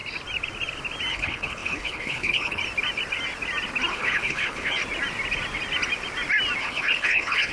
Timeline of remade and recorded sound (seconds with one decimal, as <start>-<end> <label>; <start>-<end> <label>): 0.0-1.1 recorded; 1.1-2.6 remade; 2.6-3.9 recorded; 3.9-4.8 remade; 4.8-6.6 recorded; 6.6-7.5 remade